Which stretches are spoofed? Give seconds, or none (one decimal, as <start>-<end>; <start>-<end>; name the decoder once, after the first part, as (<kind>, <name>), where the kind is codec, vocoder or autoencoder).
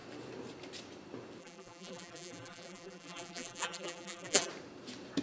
1.4-4.5 (vocoder, BigVGAN v2)